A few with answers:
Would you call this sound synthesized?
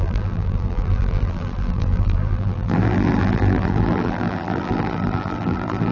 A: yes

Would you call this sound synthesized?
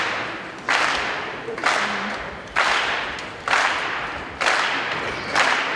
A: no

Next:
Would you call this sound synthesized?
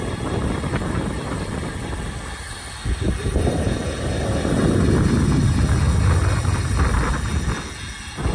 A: no